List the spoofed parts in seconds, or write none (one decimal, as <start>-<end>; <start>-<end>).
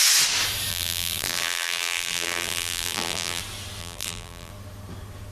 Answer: 0.7-3.4; 3.8-4.5